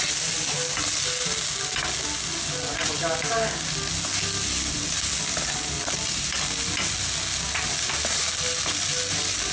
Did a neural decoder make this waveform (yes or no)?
no